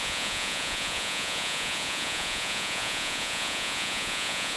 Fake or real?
fake